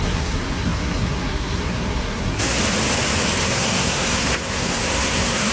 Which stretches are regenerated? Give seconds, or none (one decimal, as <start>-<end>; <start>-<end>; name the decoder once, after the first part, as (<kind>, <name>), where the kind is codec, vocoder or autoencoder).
0.0-2.6 (codec, SNAC); 3.4-5.5